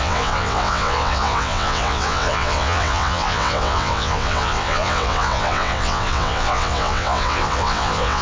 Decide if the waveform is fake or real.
fake